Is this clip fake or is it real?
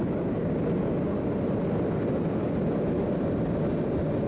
real